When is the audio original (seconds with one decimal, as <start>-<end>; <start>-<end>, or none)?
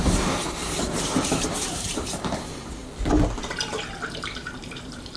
0.6-1.2; 2.8-4.2